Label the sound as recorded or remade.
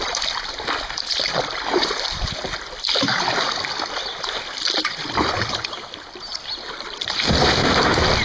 recorded